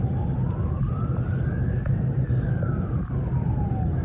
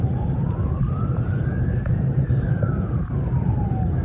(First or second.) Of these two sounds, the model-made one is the second